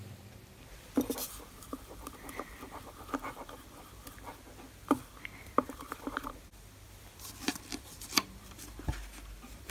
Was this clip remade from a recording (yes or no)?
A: no